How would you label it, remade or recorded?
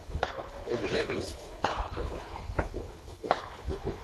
remade